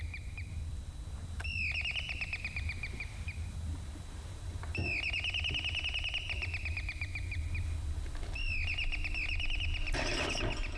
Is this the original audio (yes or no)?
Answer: yes